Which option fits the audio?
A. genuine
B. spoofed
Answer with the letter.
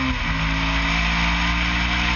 A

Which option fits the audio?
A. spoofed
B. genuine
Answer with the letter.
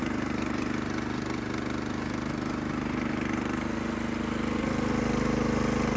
B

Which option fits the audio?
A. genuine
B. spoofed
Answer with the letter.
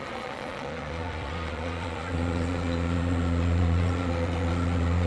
B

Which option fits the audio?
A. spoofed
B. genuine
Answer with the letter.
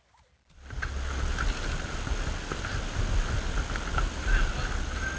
B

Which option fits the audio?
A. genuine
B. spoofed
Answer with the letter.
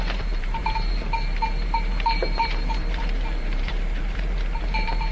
B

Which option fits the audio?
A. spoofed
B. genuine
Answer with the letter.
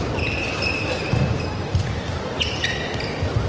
B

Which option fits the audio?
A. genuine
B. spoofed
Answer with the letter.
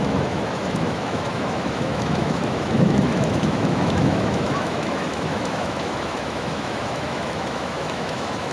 B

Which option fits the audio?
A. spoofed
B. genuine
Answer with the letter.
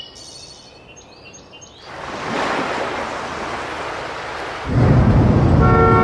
B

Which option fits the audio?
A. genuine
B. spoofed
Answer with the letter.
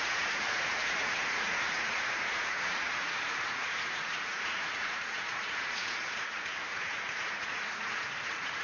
B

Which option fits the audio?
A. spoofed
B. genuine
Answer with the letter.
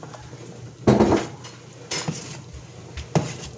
B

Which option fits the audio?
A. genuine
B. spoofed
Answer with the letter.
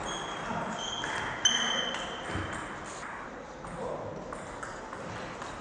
A